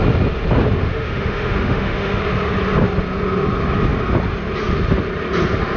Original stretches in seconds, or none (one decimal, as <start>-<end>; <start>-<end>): 0.0-0.8; 2.2-5.8